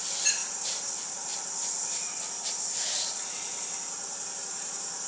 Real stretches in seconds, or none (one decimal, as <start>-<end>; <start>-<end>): 0.0-5.1